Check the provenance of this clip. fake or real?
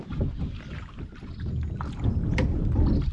real